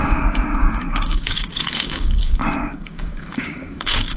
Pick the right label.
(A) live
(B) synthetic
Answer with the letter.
B